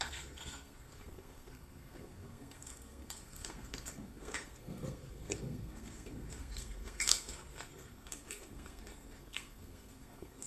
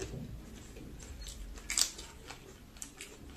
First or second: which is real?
second